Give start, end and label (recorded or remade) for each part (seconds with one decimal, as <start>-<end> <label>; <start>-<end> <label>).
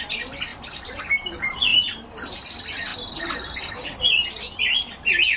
0.0-5.4 recorded